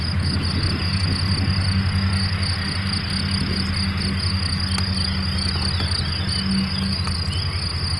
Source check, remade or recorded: recorded